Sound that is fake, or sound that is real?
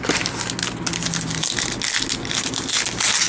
real